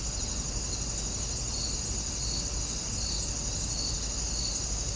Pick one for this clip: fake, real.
real